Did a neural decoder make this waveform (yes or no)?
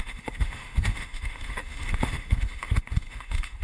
yes